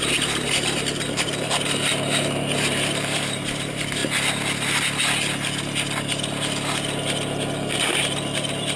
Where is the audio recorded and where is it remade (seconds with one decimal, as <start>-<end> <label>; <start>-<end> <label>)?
0.0-4.0 remade; 4.0-7.8 recorded; 7.8-8.8 remade